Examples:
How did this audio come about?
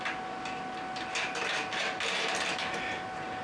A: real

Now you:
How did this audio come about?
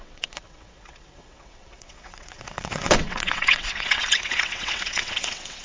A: fake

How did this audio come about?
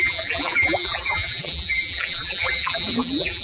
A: fake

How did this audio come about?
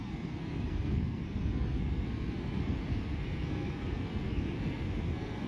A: fake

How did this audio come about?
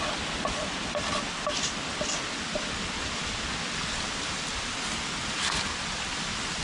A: real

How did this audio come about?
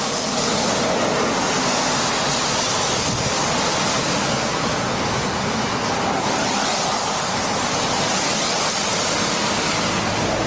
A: real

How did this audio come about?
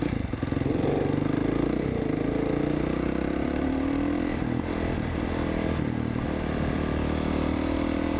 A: real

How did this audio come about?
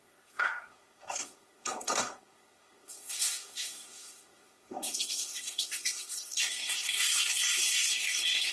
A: fake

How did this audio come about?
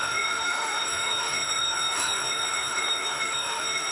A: fake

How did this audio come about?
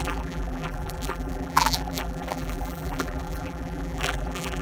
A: fake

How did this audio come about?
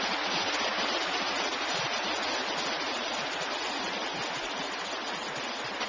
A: real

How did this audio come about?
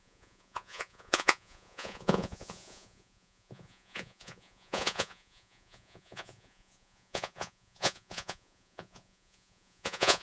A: fake